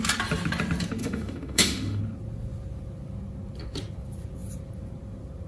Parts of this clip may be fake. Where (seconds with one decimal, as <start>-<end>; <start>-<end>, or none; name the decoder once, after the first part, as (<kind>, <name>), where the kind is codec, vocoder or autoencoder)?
1.0-2.0 (autoencoder, DAC-VAE)